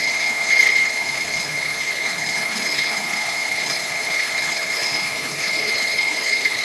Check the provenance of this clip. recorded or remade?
remade